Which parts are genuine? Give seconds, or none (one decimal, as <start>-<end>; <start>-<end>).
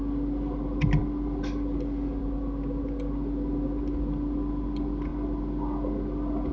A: 0.0-6.5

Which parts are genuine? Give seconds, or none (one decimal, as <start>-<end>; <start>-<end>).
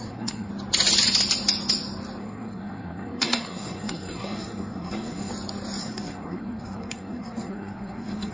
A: 0.5-2.2; 5.3-5.8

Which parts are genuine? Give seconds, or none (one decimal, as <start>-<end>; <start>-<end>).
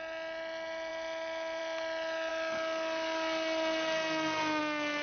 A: 0.0-5.0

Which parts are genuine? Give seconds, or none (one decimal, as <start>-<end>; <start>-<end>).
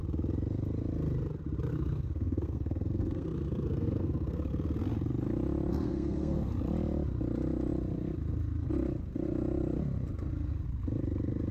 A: 0.0-1.7; 4.5-5.7; 6.5-11.5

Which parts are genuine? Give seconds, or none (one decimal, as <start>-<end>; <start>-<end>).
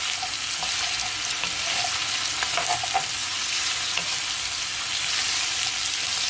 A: 0.0-3.2; 4.1-6.3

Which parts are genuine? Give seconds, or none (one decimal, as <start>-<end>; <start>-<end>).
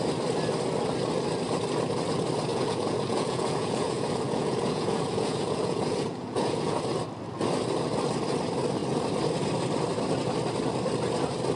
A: 0.0-2.5; 6.8-11.6